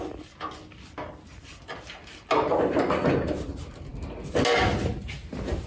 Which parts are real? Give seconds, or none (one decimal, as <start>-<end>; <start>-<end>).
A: 0.0-5.7